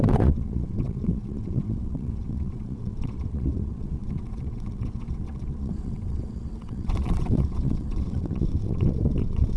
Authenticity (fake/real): fake